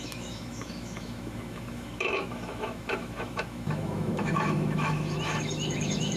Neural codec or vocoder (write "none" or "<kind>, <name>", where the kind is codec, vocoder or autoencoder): autoencoder, DAC-VAE